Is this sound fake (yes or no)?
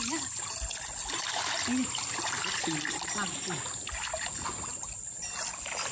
no